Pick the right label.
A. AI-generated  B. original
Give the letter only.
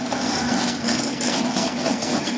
A